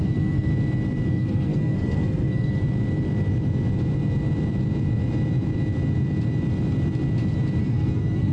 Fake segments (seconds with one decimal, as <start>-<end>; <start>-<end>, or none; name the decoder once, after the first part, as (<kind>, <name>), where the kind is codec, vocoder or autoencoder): 0.0-0.5 (codec, SNAC); 1.1-2.6; 7.6-8.3